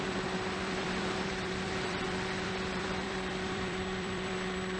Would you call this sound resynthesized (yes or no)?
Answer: yes